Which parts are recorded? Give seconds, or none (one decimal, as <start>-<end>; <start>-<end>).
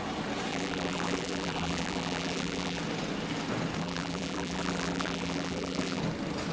0.0-0.5; 2.8-3.8; 6.0-6.5